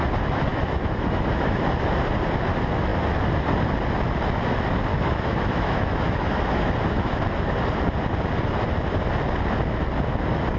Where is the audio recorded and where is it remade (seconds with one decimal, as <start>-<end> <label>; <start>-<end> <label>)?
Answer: 0.0-0.5 recorded; 0.5-1.6 remade; 1.6-4.9 recorded; 4.9-6.7 remade; 6.7-10.6 recorded